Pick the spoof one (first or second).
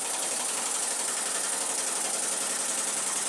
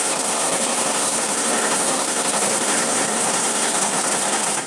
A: second